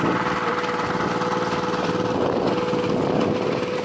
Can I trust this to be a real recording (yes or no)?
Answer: yes